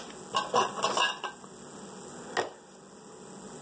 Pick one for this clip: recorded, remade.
recorded